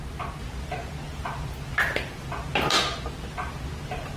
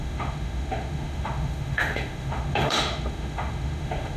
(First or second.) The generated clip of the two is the second